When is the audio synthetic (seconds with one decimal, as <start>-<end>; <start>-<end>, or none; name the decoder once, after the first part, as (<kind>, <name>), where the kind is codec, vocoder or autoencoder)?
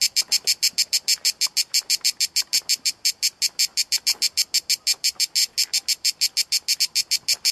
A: none